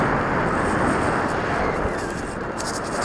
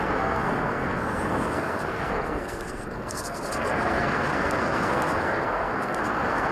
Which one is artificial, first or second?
second